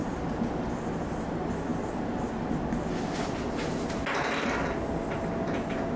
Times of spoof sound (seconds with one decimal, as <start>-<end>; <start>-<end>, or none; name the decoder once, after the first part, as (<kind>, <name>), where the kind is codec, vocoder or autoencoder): none

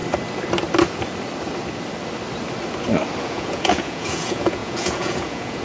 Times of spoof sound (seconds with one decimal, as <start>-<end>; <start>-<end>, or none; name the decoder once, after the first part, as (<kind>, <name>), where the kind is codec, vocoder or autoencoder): 3.2-5.6 (vocoder, Vocos)

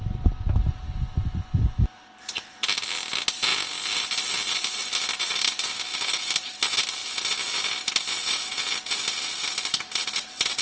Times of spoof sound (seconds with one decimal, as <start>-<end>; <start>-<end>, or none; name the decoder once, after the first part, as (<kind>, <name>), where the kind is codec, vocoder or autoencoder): none